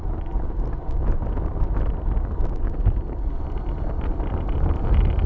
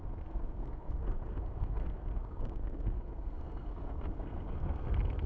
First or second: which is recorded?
first